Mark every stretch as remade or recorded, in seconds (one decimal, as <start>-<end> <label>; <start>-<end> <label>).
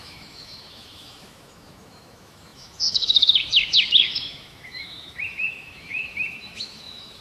0.0-7.2 remade